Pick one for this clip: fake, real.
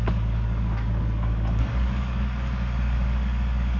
fake